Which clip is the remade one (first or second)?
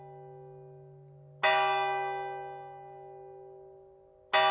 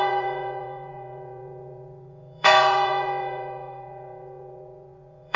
second